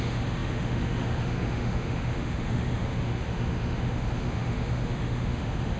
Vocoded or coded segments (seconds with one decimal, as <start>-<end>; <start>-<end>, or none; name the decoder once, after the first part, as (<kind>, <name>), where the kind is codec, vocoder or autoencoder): 0.0-5.8 (autoencoder, DAC-VAE)